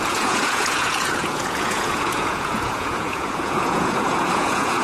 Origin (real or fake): fake